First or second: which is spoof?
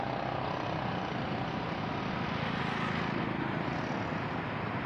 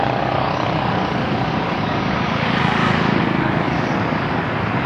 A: second